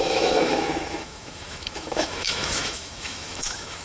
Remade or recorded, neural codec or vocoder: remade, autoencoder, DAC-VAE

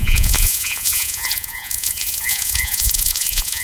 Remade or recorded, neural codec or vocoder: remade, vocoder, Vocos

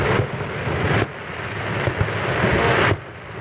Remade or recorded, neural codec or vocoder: recorded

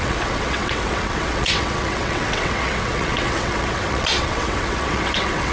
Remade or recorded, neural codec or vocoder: remade, vocoder, WaveNeXt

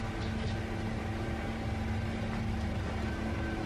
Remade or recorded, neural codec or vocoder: recorded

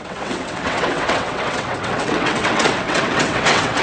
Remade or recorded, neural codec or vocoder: remade, vocoder, WaveNeXt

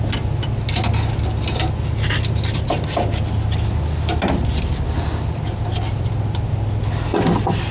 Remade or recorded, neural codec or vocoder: recorded